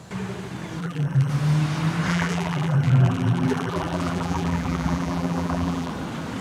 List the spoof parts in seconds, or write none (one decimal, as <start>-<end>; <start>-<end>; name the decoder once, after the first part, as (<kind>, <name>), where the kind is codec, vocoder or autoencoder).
0.8-1.3 (vocoder, BigVGAN v2); 2.1-5.9